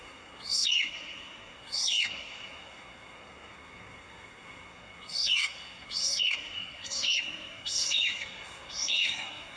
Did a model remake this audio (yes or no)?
yes